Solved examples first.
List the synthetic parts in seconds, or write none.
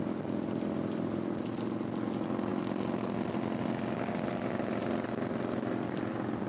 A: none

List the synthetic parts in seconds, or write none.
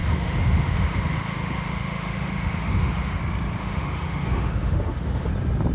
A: 0.0-3.2 (autoencoder, DAC-VAE); 3.6-5.3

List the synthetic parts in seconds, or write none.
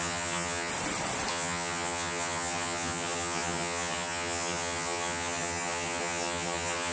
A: 0.0-0.7 (vocoder, HiFi-GAN); 1.3-6.9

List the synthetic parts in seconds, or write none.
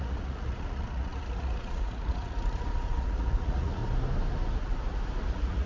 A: 0.0-3.8 (vocoder, Vocos); 5.3-5.7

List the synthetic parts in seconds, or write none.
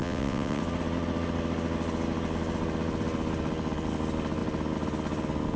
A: 0.0-0.6 (vocoder, WaveNeXt)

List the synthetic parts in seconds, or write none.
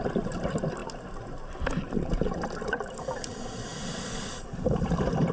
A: none